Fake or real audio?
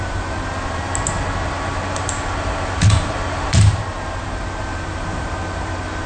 fake